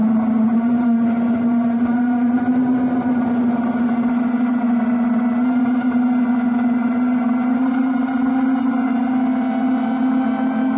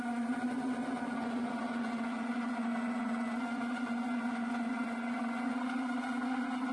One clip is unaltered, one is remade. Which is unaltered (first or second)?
first